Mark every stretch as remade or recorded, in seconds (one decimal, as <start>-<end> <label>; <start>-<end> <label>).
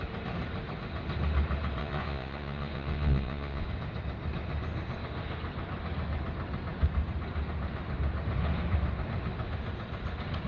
0.0-1.8 recorded; 1.8-3.7 remade; 3.7-10.5 recorded